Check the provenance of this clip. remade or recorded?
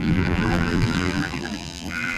remade